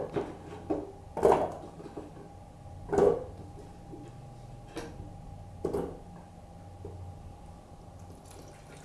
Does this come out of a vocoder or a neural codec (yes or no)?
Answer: no